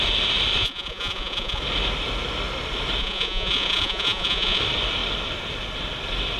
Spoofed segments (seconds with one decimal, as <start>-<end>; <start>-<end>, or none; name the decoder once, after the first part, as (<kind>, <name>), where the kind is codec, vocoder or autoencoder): 0.6-1.6 (vocoder, Vocos); 3.0-4.6